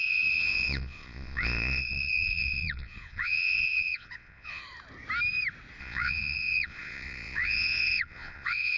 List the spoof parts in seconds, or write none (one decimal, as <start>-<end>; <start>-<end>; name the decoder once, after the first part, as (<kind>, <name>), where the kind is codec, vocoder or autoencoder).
0.0-4.6 (vocoder, Vocos); 5.8-8.8